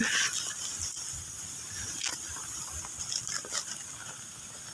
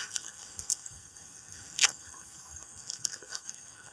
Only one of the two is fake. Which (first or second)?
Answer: second